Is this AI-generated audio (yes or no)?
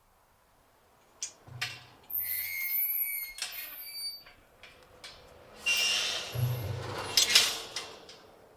no